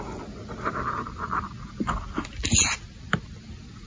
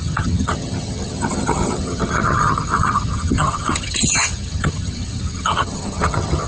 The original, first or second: first